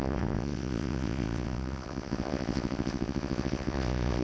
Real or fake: fake